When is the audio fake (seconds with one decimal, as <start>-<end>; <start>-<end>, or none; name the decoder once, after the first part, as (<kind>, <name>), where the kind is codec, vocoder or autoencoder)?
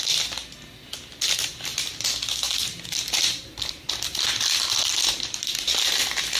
4.9-5.9 (vocoder, BigVGAN v2)